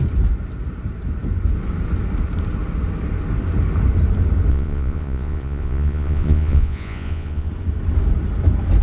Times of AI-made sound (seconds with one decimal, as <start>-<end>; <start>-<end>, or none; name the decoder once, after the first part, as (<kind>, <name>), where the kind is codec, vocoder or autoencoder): 4.5-7.5 (vocoder, Vocos)